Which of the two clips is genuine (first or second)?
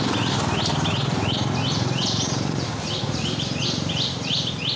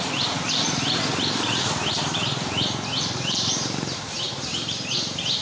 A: first